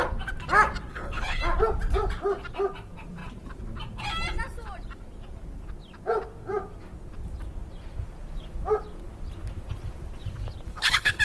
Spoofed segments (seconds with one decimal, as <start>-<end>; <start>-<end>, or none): 0.9-1.4; 10.7-11.2